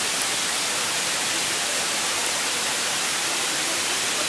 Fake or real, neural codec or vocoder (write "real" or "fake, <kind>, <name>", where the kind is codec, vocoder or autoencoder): real